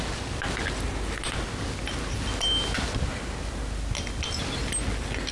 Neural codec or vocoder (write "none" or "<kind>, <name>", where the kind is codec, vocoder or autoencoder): none